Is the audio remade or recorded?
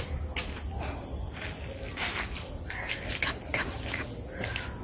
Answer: recorded